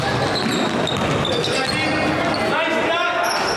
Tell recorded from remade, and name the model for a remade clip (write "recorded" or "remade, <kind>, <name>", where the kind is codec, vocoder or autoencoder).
recorded